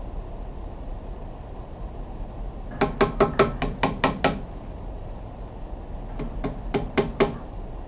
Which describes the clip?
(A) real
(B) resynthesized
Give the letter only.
A